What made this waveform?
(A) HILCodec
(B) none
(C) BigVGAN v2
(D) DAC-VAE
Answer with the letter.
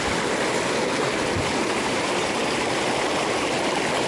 B